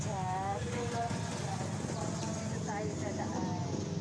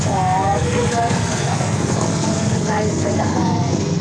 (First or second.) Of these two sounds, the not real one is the second